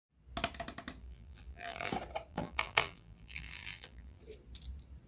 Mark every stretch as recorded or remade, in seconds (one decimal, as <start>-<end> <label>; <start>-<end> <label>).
0.0-1.0 recorded; 1.0-1.9 remade; 1.9-2.3 recorded; 2.3-4.2 remade; 4.2-5.1 recorded